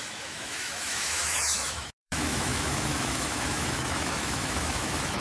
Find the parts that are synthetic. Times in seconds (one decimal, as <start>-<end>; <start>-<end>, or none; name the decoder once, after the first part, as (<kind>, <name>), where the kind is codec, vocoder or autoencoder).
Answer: 0.0-5.2 (autoencoder, DAC-VAE)